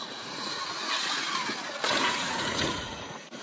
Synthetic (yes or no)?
yes